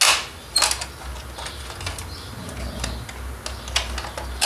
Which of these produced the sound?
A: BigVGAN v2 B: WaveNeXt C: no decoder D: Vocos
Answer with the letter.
C